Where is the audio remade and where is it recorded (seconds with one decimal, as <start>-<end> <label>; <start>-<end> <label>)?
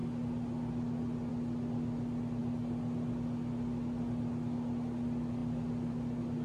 0.0-6.4 recorded